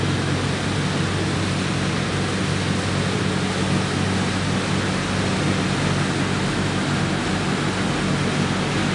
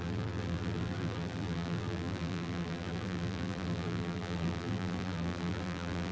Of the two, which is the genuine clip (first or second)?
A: first